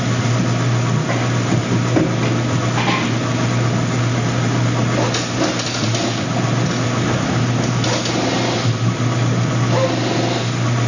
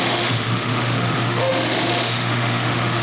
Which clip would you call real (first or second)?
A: first